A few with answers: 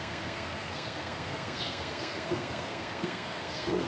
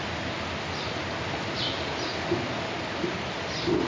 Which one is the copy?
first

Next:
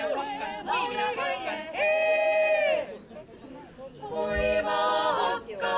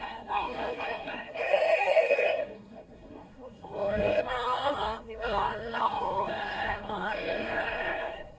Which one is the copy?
second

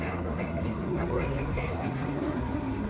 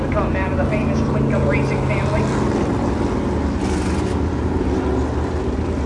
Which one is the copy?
first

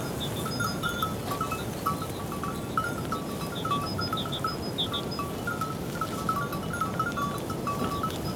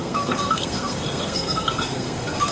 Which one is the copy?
second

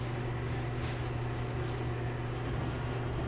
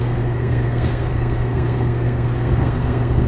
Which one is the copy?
second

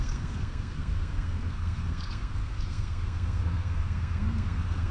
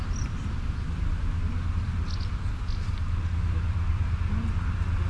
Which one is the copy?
first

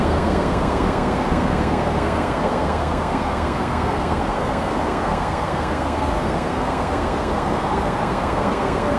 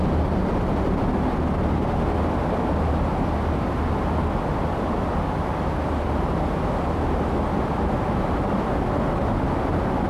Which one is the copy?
first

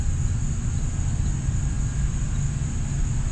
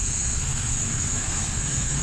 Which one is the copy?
second